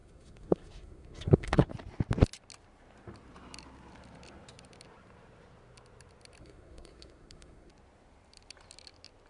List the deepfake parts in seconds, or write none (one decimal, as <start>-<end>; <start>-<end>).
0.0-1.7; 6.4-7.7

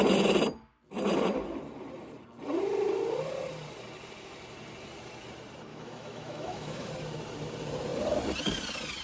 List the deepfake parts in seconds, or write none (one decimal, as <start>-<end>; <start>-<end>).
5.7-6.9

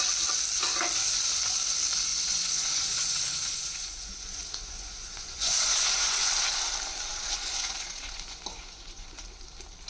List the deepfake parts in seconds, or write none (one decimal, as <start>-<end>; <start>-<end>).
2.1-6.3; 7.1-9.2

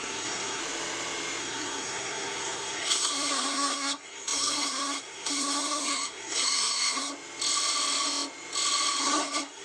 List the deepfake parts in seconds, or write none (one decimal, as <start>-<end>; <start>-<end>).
0.0-0.6; 1.4-7.1; 9.0-9.6